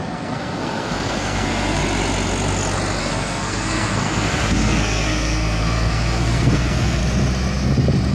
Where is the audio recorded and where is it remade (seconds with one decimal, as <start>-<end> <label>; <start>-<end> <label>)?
0.0-1.8 remade; 1.8-3.0 recorded; 3.0-7.0 remade; 7.0-8.1 recorded